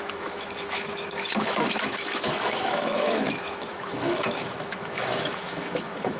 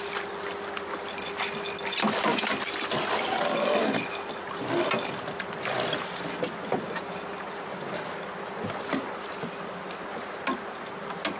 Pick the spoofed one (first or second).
first